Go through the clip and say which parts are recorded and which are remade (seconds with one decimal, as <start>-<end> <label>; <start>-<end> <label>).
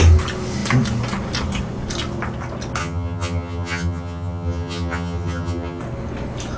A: 0.0-2.8 recorded; 2.8-5.8 remade; 5.8-6.6 recorded